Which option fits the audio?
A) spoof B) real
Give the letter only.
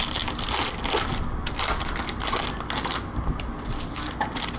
A